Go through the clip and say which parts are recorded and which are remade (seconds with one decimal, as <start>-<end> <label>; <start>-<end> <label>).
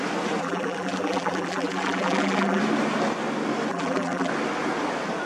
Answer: 0.0-0.4 recorded; 0.4-2.6 remade; 2.6-3.7 recorded; 3.7-4.3 remade; 4.3-5.3 recorded